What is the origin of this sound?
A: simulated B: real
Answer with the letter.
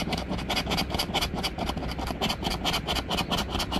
B